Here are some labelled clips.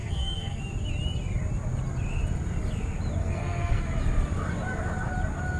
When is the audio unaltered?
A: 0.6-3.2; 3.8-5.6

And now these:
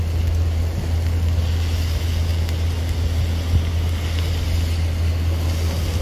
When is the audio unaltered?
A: 0.0-6.0

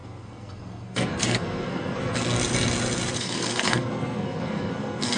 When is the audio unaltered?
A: 2.4-3.2

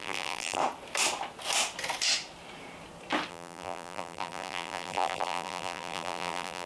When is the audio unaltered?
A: 0.6-3.3

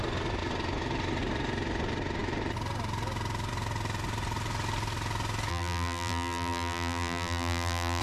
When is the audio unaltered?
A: 0.0-5.5

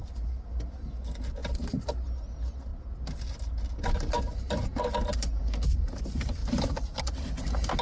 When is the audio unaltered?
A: 0.0-6.4; 7.0-7.8

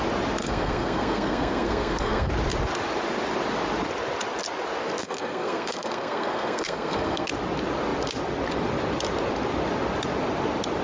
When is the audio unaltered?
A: 0.0-0.4; 2.3-5.0; 7.3-10.8

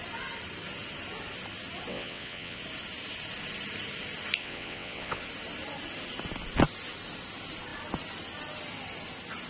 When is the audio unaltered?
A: 0.0-1.9; 2.6-4.4; 5.2-9.5